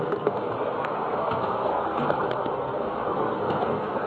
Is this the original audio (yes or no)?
no